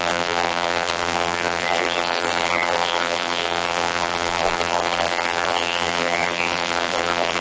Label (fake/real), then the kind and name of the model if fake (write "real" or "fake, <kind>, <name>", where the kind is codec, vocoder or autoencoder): fake, vocoder, BigVGAN v2